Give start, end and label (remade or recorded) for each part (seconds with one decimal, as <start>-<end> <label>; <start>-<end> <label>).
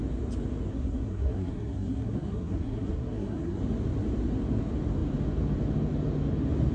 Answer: 0.0-0.7 recorded; 0.7-3.6 remade; 3.6-6.7 recorded